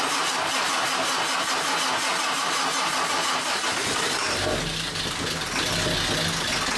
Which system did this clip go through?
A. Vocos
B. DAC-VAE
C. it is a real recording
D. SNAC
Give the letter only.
C